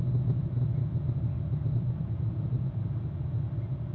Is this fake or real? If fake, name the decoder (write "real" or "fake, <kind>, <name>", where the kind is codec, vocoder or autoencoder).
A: real